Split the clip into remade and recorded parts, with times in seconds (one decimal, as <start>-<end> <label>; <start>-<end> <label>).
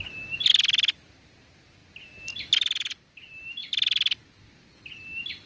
0.0-5.5 recorded